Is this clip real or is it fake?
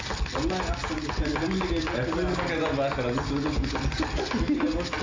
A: real